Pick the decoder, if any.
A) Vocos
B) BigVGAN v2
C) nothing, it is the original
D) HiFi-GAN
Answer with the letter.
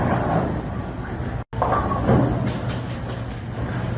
C